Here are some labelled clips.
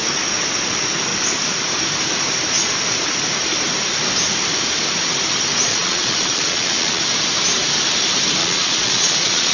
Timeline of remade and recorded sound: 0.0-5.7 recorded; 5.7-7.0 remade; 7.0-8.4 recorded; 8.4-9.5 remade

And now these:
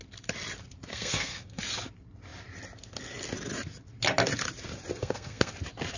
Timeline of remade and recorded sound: 0.0-0.9 recorded; 0.9-1.6 remade; 1.6-5.0 recorded; 5.0-5.5 remade; 5.5-6.0 recorded

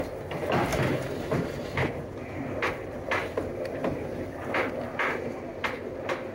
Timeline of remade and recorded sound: 0.0-6.3 recorded

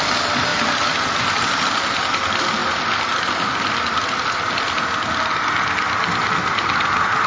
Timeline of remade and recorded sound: 0.0-7.3 recorded

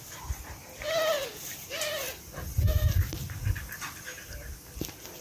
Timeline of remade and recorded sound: 0.0-5.2 recorded

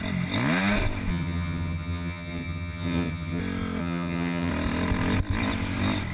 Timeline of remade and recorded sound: 0.0-1.1 recorded; 1.1-3.4 remade; 3.4-3.8 recorded; 3.8-4.5 remade; 4.5-6.1 recorded